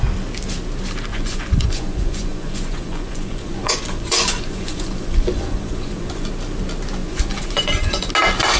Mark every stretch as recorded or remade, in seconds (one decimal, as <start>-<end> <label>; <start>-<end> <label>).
0.0-1.1 recorded; 1.1-6.3 remade; 6.3-7.0 recorded; 7.0-8.1 remade; 8.1-8.6 recorded